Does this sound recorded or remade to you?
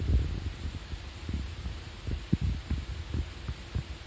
recorded